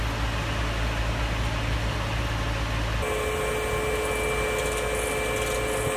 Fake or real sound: real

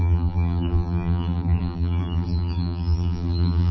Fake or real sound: fake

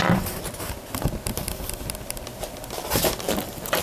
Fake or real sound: real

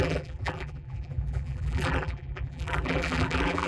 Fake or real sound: fake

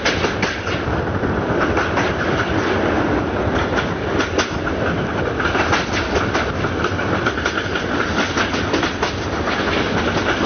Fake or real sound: real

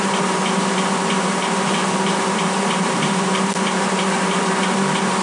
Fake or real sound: fake